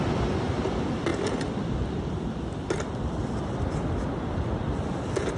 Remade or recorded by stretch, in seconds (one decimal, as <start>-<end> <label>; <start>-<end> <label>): 0.0-5.4 recorded